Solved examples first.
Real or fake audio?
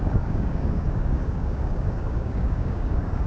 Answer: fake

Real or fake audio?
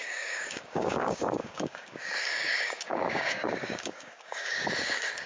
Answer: fake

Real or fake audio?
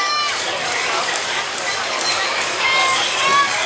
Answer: fake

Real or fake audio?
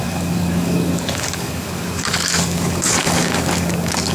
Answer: fake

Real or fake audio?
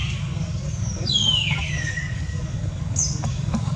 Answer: fake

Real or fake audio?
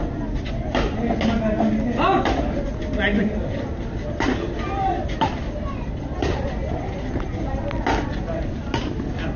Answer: real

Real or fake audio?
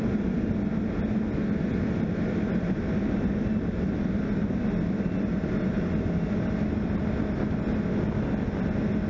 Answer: real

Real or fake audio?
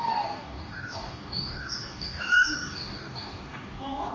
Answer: fake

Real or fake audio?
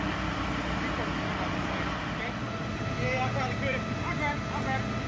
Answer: real